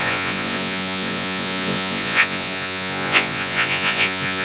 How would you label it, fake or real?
fake